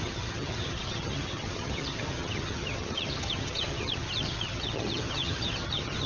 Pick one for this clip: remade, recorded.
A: remade